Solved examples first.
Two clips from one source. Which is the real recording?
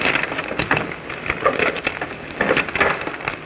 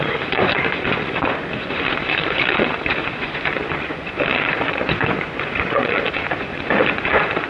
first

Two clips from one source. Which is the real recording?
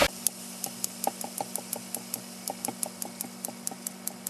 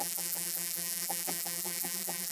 first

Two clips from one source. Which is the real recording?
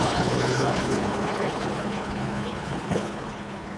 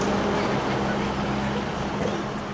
second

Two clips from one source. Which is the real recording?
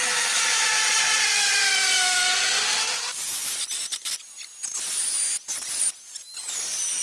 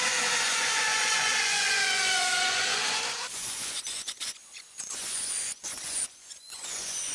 first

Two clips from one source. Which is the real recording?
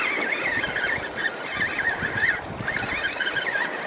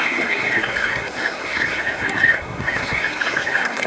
first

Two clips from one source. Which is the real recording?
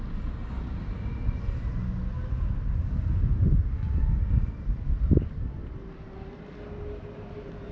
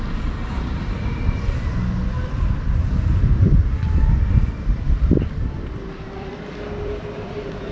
first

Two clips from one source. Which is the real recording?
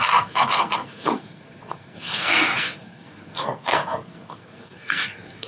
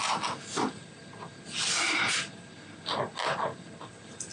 second